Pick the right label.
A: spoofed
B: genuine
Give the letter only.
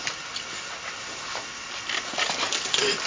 B